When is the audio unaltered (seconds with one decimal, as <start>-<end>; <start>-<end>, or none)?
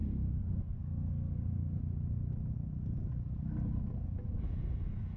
1.8-5.2